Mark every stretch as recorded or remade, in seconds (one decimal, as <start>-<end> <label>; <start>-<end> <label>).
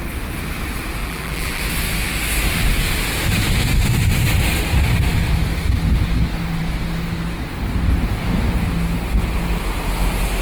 0.0-1.0 recorded; 1.0-1.6 remade; 1.6-10.4 recorded